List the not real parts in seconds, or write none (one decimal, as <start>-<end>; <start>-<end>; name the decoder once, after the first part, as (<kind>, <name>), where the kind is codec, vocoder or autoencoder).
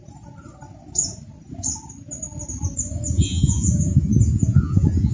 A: 3.1-5.1 (vocoder, Vocos)